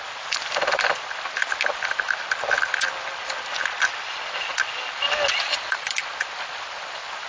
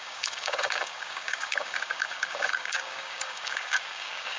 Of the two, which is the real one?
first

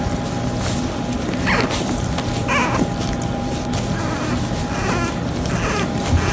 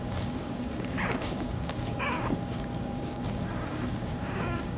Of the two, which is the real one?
first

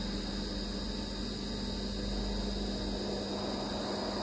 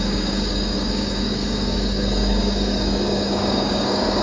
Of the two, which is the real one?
first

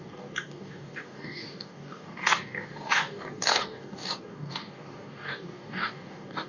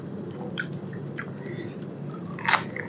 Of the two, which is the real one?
second